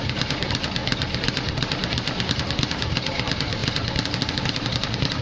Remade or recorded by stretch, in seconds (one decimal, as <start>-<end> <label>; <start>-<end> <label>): 0.0-0.8 remade; 0.8-2.3 recorded; 2.3-3.6 remade; 3.6-4.2 recorded; 4.2-5.2 remade